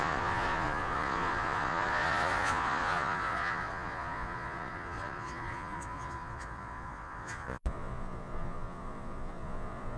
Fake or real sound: fake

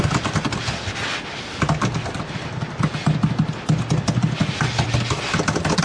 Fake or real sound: real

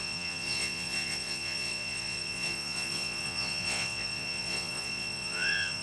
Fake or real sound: fake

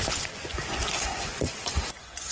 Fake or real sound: fake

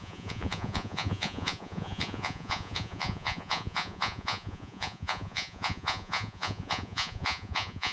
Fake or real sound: fake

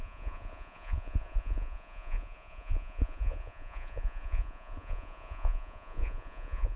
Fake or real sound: fake